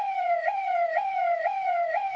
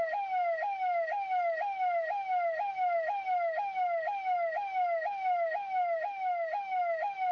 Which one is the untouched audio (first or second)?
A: second